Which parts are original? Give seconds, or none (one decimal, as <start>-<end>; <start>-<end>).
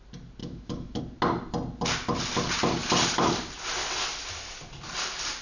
0.0-0.4; 1.0-5.4